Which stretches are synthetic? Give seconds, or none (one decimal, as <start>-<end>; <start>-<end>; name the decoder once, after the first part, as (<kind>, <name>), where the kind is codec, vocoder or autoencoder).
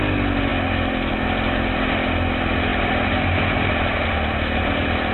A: none